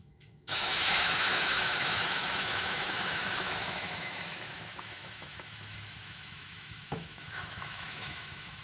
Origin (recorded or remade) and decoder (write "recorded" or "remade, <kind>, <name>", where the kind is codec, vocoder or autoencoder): remade, autoencoder, DAC-VAE